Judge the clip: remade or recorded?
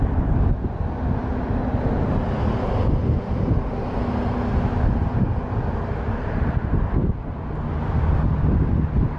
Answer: recorded